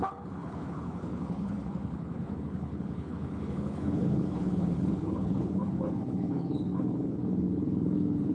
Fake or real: fake